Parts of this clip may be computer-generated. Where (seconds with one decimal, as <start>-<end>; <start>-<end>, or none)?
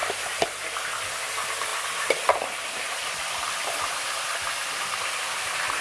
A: 1.2-5.8